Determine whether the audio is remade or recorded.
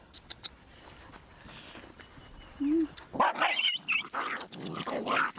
recorded